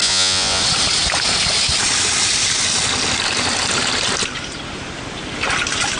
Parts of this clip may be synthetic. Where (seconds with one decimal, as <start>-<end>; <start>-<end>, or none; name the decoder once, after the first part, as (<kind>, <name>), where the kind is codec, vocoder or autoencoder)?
0.0-0.6 (vocoder, Vocos)